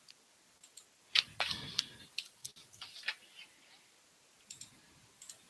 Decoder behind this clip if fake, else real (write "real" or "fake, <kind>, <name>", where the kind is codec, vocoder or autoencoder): real